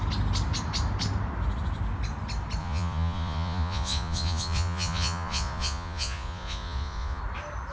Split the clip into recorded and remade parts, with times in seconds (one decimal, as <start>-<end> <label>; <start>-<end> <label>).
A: 0.0-2.6 recorded; 2.6-7.2 remade; 7.2-7.7 recorded